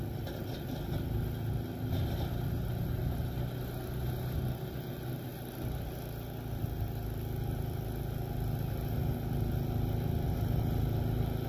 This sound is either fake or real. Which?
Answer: real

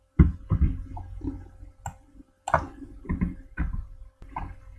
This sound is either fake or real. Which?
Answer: real